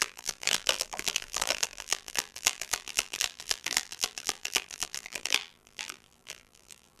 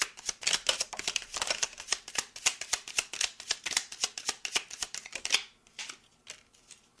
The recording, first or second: second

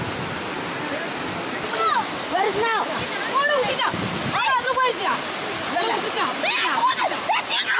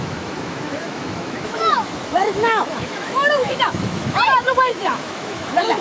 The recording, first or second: first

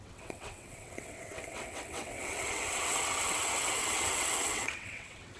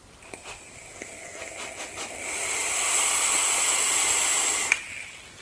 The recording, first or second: second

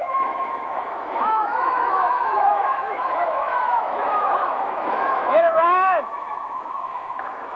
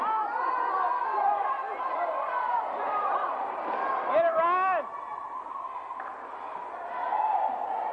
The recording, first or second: second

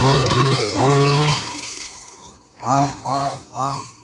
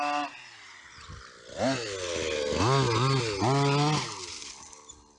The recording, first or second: second